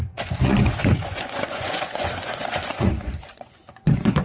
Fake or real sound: fake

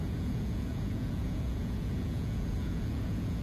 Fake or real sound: fake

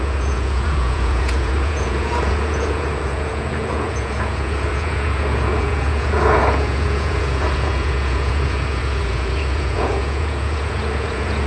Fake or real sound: fake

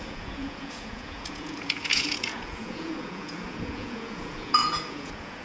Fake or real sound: fake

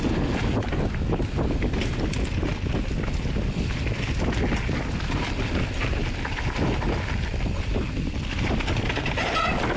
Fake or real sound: real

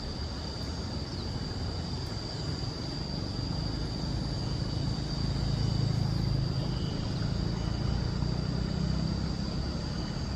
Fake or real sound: real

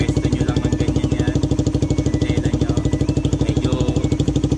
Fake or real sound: real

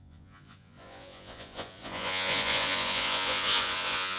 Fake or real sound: fake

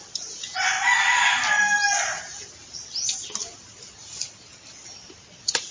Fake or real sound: real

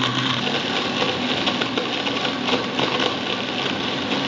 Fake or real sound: real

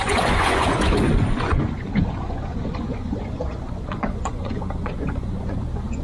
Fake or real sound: fake